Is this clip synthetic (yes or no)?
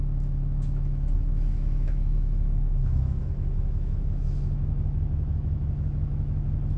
yes